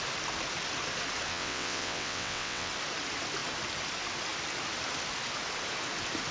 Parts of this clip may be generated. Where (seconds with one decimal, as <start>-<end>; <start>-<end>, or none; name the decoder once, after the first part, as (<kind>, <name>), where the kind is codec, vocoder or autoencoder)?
1.3-2.7 (vocoder, WaveNeXt)